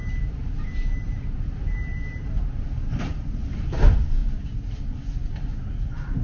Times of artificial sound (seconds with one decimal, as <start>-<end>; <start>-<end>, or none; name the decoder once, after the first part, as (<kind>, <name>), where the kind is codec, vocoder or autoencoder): 0.0-4.2 (vocoder, BigVGAN v2); 5.7-6.2